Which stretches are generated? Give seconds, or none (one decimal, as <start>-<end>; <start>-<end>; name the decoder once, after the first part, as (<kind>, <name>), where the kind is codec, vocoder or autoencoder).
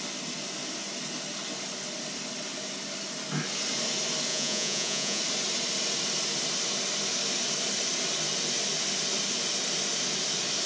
4.3-5.2 (vocoder, Vocos)